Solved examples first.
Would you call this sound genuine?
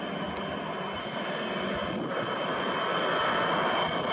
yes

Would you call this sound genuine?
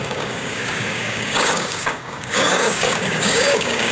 no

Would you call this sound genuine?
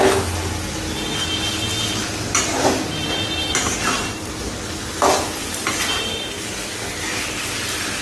yes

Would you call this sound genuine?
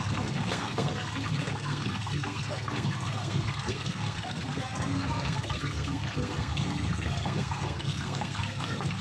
no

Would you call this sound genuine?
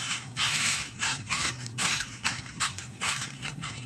no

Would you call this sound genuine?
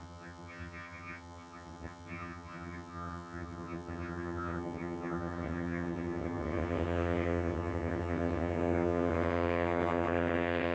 no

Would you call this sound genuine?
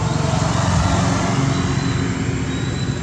yes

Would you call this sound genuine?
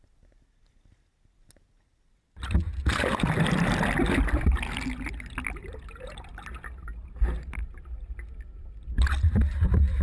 yes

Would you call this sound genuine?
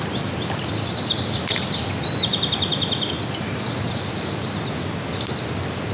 yes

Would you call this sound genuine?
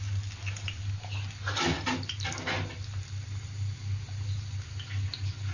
yes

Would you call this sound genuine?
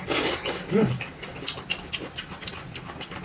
yes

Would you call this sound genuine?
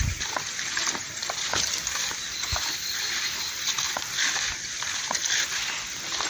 yes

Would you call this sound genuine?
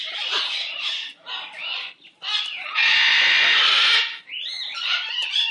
yes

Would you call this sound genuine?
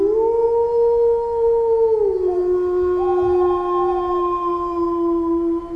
yes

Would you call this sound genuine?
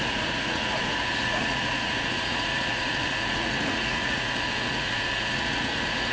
no